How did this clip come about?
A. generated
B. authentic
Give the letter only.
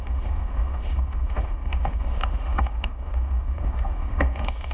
A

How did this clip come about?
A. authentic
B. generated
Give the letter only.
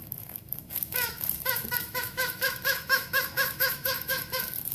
B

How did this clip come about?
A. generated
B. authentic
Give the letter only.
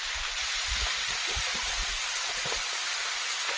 B